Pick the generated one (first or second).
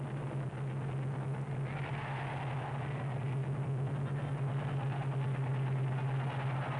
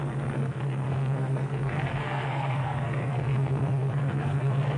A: second